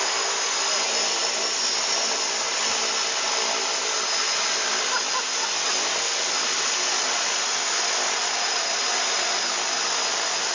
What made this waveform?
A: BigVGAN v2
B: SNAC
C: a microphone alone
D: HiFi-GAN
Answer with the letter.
C